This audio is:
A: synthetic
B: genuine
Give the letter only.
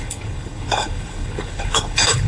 A